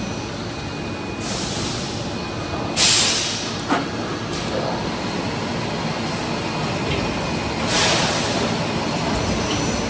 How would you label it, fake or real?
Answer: real